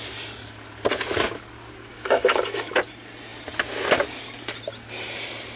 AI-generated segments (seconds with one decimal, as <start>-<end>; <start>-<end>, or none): 1.9-2.7